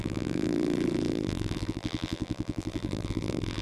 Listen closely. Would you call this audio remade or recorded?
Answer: remade